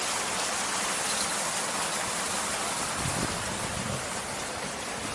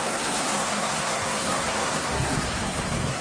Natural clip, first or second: first